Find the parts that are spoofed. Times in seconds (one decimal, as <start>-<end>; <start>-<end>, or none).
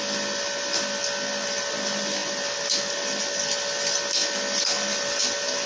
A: none